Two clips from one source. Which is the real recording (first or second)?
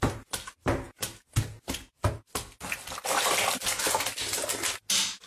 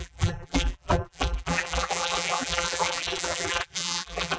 first